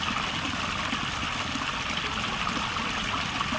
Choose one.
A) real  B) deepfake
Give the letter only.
A